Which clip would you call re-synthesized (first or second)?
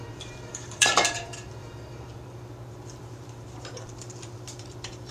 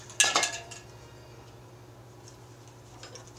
first